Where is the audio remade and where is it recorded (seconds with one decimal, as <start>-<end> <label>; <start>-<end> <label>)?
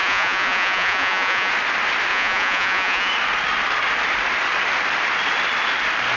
0.0-1.5 remade; 1.5-2.1 recorded; 2.1-3.1 remade; 3.1-6.2 recorded